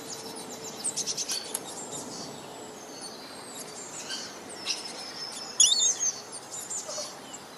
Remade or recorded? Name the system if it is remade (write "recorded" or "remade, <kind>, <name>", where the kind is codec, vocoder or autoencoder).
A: recorded